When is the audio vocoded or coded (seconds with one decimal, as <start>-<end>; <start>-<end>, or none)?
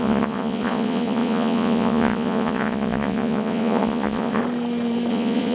0.0-4.4; 5.1-5.5